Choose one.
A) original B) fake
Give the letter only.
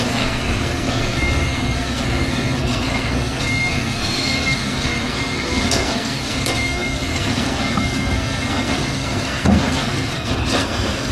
B